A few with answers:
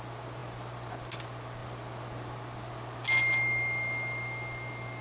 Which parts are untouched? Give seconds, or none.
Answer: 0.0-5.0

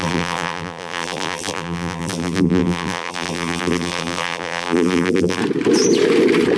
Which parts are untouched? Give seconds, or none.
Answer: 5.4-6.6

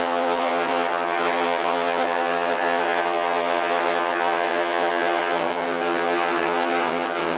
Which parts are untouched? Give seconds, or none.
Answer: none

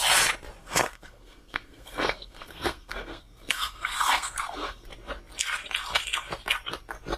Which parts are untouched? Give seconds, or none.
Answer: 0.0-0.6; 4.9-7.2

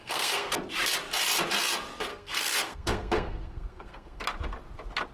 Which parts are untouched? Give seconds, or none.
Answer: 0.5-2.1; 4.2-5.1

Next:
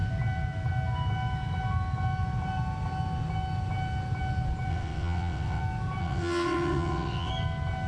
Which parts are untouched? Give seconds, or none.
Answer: 0.0-4.7; 5.6-6.0; 7.3-7.9

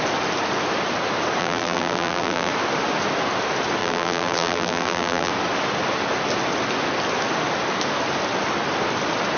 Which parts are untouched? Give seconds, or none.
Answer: 0.0-1.4; 2.5-3.8; 5.3-9.4